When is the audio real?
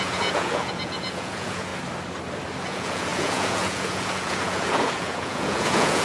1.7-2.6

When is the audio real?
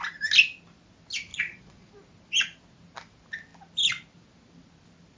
0.0-1.3; 1.9-5.2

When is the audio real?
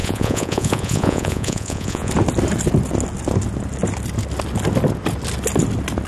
2.1-6.1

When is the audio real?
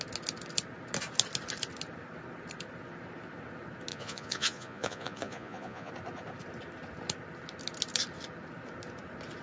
0.0-3.9; 5.9-9.4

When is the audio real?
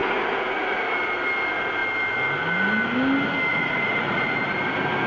0.8-3.5; 4.4-5.1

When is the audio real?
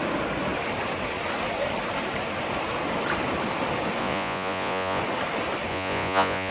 0.0-4.0; 5.0-5.7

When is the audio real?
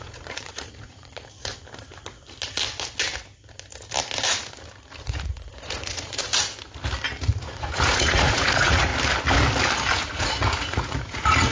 1.5-5.0; 6.3-7.4; 8.9-9.9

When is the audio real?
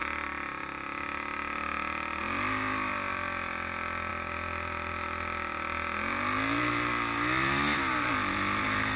0.0-9.0